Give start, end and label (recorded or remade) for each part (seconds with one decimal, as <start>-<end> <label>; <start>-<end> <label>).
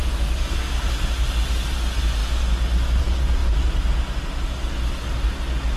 0.0-5.8 recorded